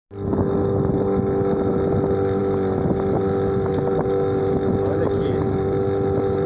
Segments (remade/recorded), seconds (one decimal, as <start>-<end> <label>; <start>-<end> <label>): 0.0-6.5 recorded

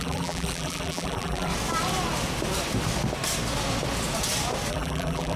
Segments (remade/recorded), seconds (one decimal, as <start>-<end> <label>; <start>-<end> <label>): 0.0-1.5 remade; 1.5-4.7 recorded; 4.7-5.4 remade

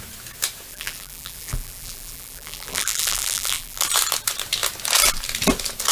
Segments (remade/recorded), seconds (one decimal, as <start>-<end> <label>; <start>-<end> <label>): 0.0-0.7 recorded; 0.7-3.8 remade; 3.8-5.9 recorded

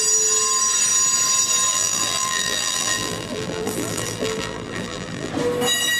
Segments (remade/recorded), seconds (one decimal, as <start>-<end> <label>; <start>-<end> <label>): 0.0-1.7 recorded; 1.7-5.3 remade; 5.3-6.0 recorded

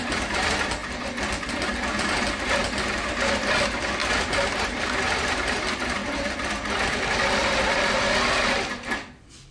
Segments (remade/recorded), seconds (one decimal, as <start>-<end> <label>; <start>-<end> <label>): 0.0-9.5 recorded

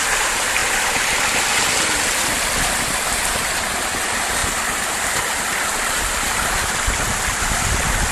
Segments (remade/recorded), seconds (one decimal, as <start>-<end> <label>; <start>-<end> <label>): 0.0-8.1 recorded

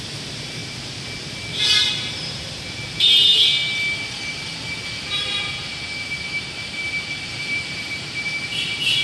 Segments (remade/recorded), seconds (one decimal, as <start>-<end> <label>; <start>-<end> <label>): 0.0-0.6 remade; 0.6-1.3 recorded; 1.3-3.3 remade; 3.3-7.3 recorded; 7.3-9.0 remade

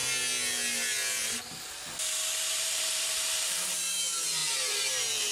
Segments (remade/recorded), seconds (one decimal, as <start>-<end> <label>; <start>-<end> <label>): 0.0-2.5 recorded; 2.5-5.3 remade